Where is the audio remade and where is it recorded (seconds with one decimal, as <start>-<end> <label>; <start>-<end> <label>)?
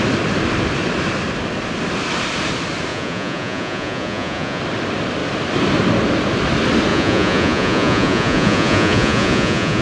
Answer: 0.0-2.9 recorded; 2.9-4.6 remade; 4.6-6.9 recorded; 6.9-9.8 remade